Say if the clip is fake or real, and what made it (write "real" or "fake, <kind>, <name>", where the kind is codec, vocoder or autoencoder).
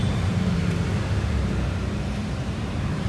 fake, vocoder, BigVGAN v2